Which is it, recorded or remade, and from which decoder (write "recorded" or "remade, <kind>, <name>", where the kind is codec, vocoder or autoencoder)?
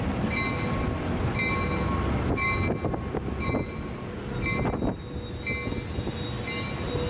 recorded